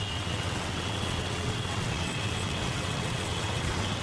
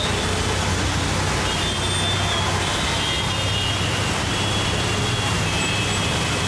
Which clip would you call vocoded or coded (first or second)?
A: first